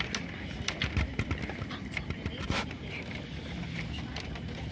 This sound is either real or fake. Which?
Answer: real